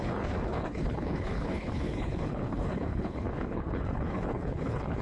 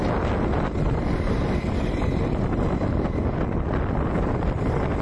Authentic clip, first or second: second